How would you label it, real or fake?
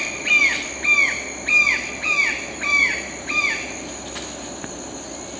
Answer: real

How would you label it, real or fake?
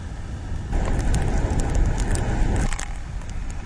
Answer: real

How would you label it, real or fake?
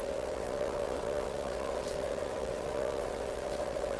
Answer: fake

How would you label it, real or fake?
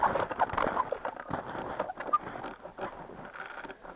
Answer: real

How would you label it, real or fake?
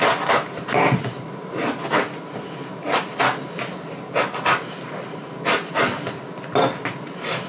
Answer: real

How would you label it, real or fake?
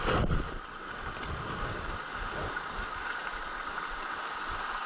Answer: real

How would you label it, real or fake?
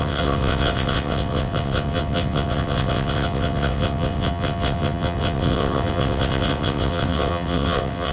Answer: fake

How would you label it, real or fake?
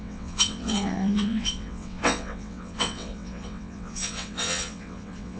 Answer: fake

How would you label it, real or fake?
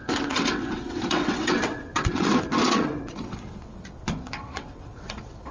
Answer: fake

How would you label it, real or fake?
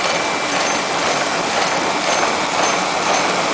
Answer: real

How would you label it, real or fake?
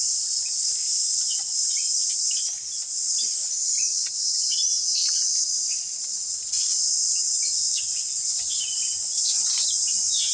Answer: real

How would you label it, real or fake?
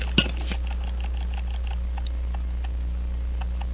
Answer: real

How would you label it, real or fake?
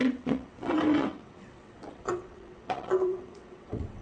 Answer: fake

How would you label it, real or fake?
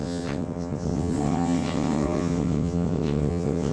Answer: fake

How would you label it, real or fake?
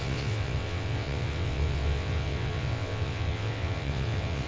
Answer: fake